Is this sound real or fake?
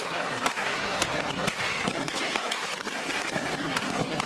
fake